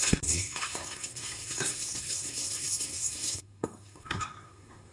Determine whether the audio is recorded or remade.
remade